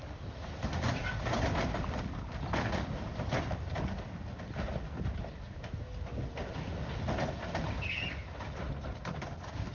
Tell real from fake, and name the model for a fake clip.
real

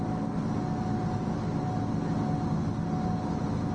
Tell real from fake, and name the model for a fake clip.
real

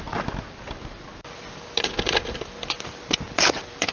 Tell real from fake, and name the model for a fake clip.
real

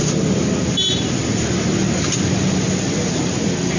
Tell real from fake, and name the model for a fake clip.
real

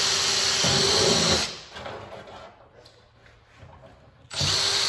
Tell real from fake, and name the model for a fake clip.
real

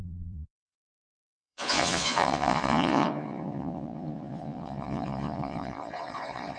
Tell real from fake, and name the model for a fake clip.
fake, vocoder, Vocos